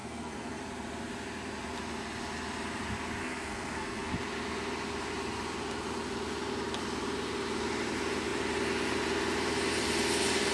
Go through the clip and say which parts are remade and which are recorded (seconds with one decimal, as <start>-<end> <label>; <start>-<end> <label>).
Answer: 0.0-0.6 remade; 0.6-3.2 recorded; 3.2-4.1 remade; 4.1-10.5 recorded